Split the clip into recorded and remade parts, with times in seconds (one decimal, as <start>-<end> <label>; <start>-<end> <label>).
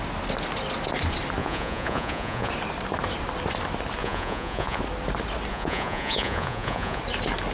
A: 0.0-1.4 recorded; 1.4-2.5 remade; 2.5-4.0 recorded; 4.0-4.8 remade; 4.8-5.5 recorded; 5.5-7.0 remade; 7.0-7.5 recorded